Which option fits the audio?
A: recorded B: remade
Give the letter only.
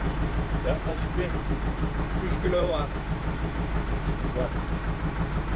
B